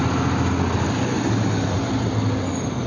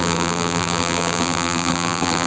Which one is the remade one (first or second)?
second